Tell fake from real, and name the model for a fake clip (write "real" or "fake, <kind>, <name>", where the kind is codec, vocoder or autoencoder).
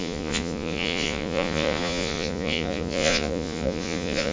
fake, vocoder, Vocos